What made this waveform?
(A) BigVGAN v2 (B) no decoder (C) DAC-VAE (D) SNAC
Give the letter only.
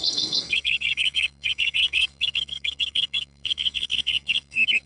D